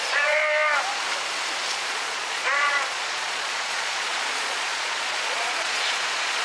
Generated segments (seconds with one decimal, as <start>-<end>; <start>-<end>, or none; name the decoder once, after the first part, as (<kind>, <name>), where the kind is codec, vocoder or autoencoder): 0.0-0.4 (vocoder, Vocos); 1.7-6.4